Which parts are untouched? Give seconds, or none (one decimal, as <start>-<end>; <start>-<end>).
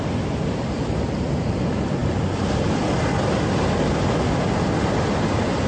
0.0-5.7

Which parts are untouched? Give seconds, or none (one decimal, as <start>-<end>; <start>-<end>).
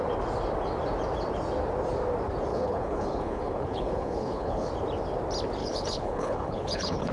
0.0-2.5; 4.7-5.6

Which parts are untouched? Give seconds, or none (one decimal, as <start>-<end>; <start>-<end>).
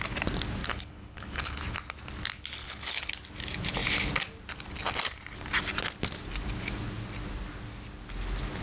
0.0-0.6; 1.6-2.6; 3.1-8.6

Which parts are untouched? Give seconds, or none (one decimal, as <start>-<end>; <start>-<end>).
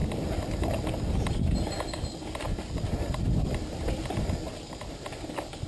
0.0-5.7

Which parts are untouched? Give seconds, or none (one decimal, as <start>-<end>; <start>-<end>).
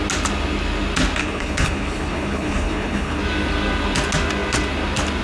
0.0-1.2; 3.2-5.2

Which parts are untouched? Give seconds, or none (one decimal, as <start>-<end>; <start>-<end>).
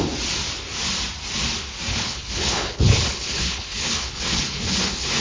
0.0-1.9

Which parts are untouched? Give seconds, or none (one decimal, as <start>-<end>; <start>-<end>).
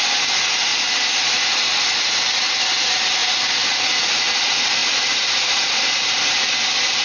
0.0-7.0